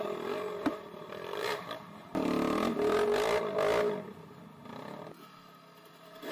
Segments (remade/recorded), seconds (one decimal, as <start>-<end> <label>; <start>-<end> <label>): 0.0-2.1 remade; 2.1-6.3 recorded